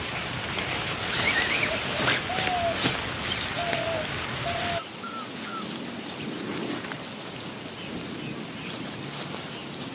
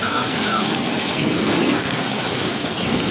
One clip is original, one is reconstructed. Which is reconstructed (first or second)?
second